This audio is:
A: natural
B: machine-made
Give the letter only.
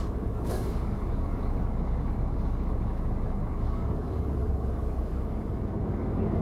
B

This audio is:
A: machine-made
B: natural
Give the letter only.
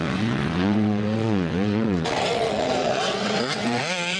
A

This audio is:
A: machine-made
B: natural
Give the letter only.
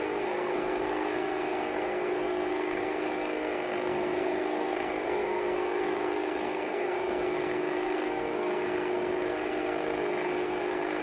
A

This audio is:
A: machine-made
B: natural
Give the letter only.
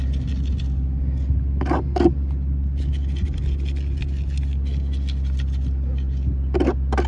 B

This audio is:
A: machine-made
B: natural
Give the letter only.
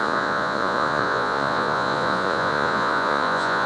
A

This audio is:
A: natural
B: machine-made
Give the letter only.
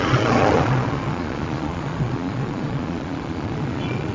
B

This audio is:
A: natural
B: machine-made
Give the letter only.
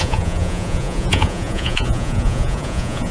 B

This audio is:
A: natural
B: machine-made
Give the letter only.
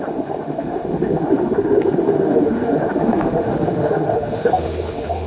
B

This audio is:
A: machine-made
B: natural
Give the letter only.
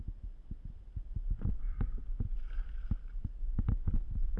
B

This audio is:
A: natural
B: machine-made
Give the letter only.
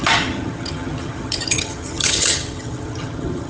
B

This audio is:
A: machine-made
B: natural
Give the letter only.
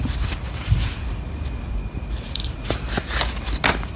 B